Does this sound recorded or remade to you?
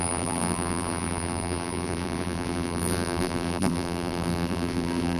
remade